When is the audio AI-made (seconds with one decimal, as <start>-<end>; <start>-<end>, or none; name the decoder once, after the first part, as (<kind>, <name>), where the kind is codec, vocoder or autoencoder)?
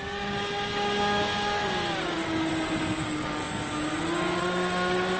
0.0-2.5 (codec, DAC); 3.0-3.4; 4.0-5.2